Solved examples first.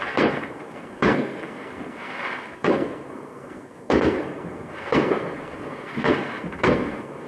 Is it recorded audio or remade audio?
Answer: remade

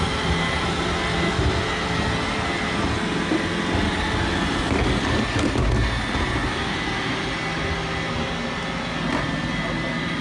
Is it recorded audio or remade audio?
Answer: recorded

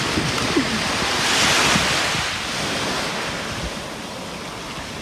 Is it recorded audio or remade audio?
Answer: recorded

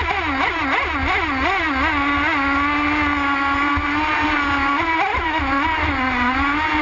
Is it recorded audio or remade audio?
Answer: recorded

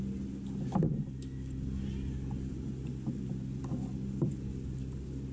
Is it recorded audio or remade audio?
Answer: recorded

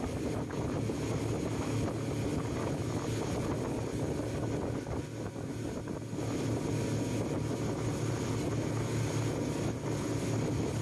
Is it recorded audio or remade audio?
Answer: recorded